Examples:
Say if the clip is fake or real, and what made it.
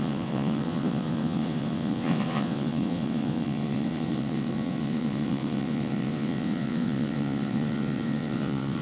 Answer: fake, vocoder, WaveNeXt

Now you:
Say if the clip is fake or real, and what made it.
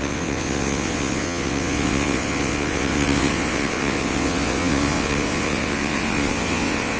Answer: fake, vocoder, WaveNeXt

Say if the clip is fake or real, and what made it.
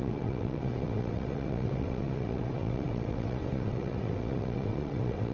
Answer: fake, vocoder, WaveNeXt